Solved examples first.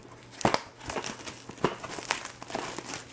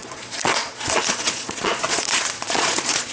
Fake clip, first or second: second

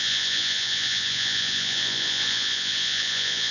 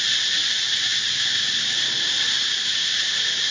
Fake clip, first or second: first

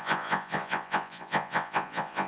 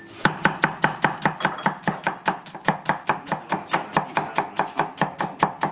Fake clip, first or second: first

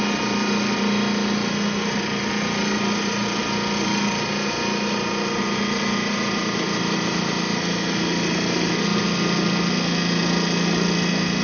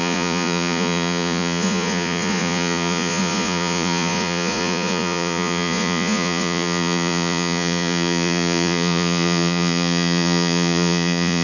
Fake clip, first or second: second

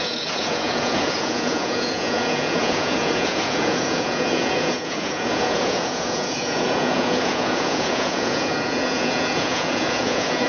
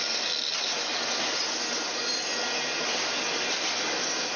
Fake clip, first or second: first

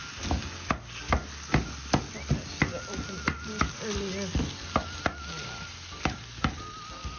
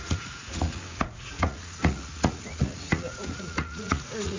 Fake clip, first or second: second